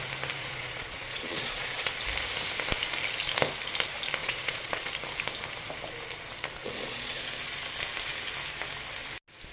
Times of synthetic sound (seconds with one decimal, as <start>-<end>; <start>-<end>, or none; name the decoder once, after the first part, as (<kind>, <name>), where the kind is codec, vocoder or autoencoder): 0.4-1.9 (vocoder, Vocos); 4.2-4.9; 6.6-7.2